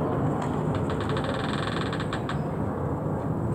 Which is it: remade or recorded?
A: recorded